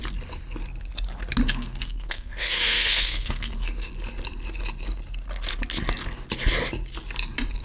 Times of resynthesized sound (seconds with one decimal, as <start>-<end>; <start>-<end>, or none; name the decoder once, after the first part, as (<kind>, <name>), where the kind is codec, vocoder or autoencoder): 1.5-3.9 (codec, SNAC)